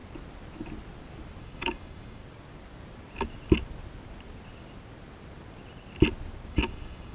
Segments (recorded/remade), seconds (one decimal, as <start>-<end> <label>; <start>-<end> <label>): 0.0-1.4 recorded; 1.4-2.2 remade; 2.2-6.5 recorded; 6.5-7.1 remade